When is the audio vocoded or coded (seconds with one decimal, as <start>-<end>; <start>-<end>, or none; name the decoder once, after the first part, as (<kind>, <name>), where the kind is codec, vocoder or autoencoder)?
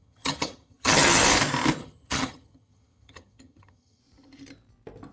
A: 0.0-1.2 (vocoder, HiFi-GAN); 1.8-4.0